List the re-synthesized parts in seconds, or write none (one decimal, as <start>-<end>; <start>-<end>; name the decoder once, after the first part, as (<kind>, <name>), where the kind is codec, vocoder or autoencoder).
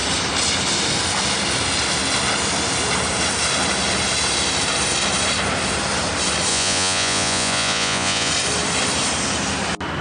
6.5-8.3 (vocoder, Vocos)